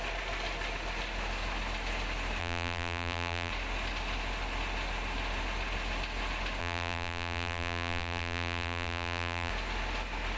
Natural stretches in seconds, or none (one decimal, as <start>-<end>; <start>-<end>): 0.0-2.4; 3.5-6.6; 9.5-10.4